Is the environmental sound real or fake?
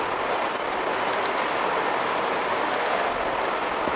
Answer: fake